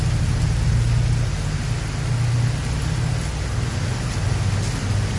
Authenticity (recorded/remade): recorded